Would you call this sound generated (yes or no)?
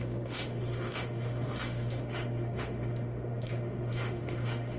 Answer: yes